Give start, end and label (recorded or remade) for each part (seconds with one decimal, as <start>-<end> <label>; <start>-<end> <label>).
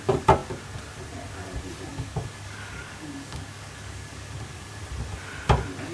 0.0-1.9 recorded; 1.9-4.8 remade; 4.8-5.9 recorded